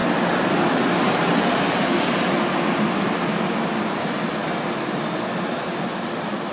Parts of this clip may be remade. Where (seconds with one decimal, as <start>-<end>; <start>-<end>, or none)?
none